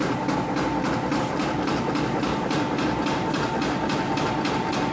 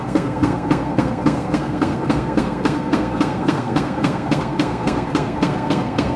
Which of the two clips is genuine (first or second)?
first